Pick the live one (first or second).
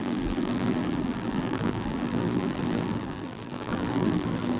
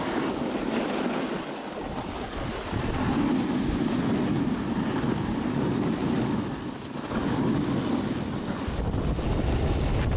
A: second